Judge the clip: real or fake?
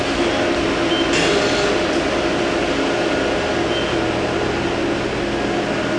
real